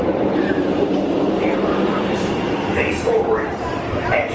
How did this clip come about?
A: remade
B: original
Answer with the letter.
A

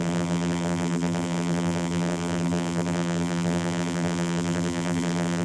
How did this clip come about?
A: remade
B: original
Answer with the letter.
A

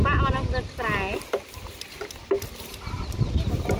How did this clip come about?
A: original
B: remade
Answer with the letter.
A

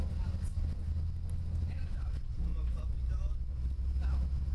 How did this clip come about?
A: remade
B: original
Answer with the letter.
B